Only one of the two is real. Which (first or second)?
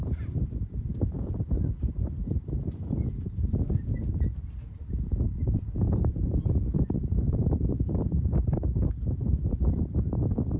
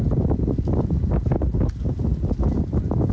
second